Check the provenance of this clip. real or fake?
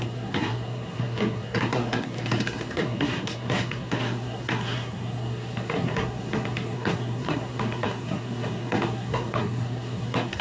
fake